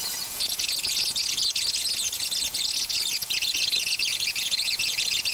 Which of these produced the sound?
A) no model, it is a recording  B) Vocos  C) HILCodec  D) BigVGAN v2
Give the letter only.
B